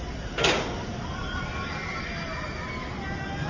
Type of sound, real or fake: real